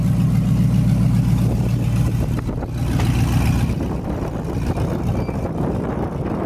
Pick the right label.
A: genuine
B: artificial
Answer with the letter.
A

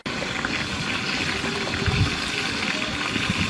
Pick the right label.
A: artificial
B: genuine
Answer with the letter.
B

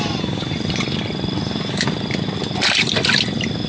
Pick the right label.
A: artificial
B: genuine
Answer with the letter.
B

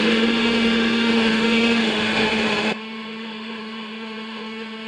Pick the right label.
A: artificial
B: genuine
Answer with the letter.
A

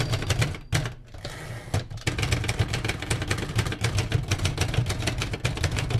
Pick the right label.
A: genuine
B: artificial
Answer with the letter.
A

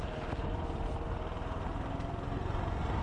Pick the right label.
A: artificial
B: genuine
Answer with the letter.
B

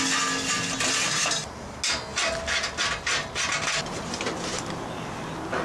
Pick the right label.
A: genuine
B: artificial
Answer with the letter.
A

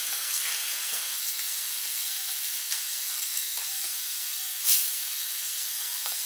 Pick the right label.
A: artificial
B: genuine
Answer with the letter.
A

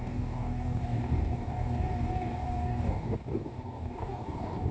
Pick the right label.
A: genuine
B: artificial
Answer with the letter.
B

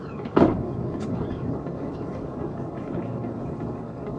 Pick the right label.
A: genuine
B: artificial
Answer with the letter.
B